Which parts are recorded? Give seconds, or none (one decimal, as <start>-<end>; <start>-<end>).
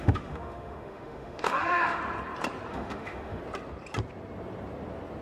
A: 2.0-2.7; 3.4-5.2